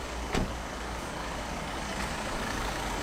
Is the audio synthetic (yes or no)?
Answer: yes